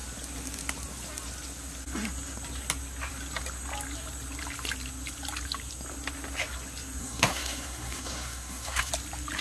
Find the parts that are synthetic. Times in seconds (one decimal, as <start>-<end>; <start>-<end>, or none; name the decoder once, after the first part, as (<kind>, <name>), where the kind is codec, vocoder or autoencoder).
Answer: 7.0-8.9 (codec, SNAC)